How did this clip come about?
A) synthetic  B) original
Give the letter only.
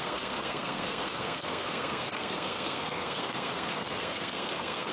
A